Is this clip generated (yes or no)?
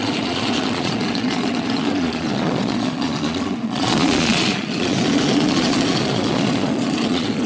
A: yes